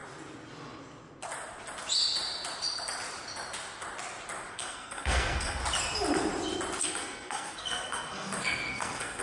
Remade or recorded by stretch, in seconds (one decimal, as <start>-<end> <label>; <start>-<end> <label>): 0.0-4.5 recorded; 4.5-5.6 remade; 5.6-6.8 recorded; 6.8-9.2 remade